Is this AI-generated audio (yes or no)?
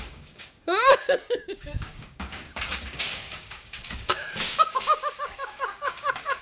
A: yes